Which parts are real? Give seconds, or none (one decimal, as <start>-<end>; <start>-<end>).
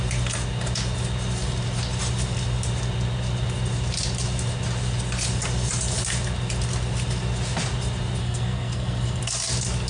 0.0-8.2; 9.2-9.9